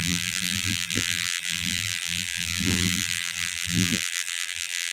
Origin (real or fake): fake